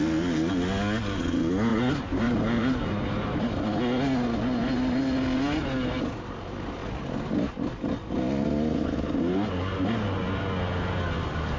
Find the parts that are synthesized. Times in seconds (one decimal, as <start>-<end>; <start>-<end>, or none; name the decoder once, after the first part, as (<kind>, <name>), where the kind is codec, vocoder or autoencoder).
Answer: 1.7-3.5 (vocoder, BigVGAN v2)